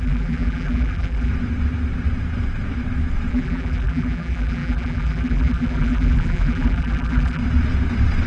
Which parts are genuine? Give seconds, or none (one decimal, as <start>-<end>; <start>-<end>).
1.3-3.3; 7.4-8.3